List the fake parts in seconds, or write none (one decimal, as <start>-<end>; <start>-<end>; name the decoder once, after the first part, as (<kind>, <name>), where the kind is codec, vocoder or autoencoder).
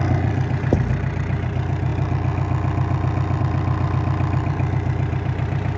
0.0-1.9 (vocoder, BigVGAN v2); 3.4-5.8